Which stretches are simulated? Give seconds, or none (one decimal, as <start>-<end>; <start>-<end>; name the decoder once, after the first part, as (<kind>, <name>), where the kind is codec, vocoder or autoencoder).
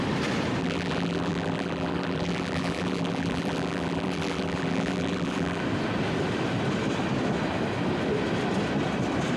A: 0.6-5.6 (vocoder, BigVGAN v2)